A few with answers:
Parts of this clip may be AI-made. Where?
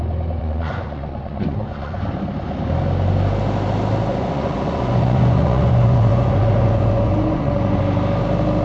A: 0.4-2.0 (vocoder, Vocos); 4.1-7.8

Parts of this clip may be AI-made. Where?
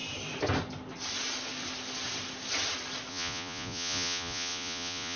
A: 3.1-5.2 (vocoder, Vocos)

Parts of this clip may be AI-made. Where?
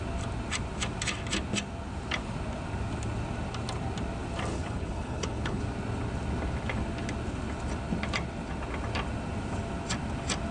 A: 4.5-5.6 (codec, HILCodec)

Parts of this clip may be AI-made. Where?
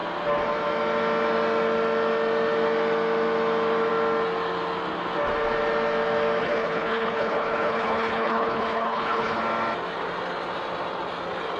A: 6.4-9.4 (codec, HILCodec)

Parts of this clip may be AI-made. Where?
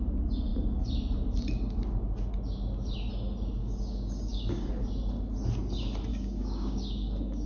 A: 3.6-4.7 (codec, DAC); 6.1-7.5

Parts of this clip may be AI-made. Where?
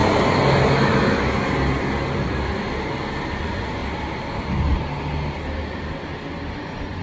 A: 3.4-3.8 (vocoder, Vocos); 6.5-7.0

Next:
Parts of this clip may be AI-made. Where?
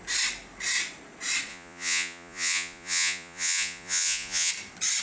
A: 1.5-4.5 (vocoder, Vocos)